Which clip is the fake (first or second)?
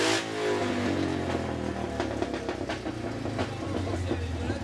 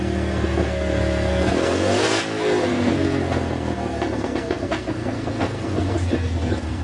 second